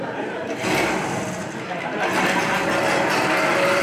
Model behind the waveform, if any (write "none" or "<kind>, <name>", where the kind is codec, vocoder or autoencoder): vocoder, BigVGAN v2